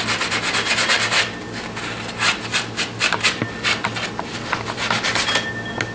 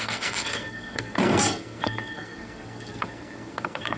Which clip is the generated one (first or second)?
second